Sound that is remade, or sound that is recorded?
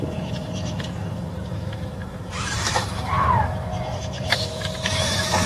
remade